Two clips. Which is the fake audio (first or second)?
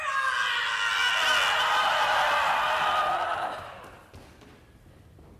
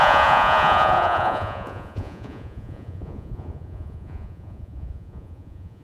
second